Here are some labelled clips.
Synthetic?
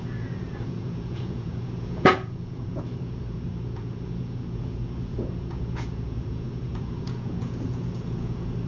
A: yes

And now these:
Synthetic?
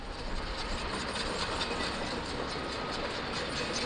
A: no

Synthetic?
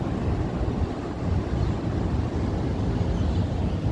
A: no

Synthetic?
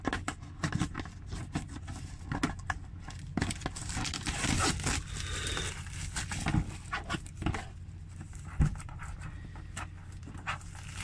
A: no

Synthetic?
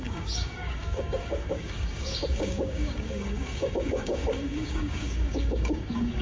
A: yes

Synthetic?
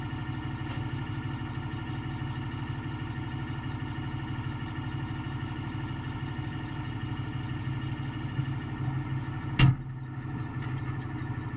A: no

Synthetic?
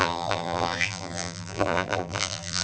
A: yes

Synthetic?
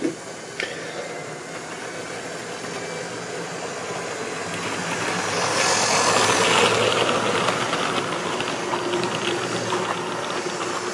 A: no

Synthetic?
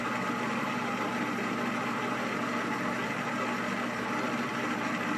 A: no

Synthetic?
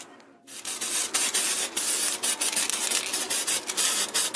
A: no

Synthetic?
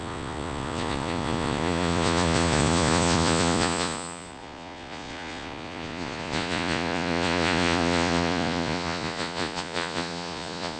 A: yes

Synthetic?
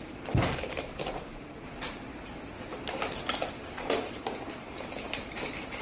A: yes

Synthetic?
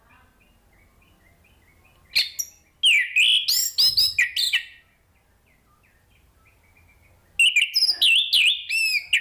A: no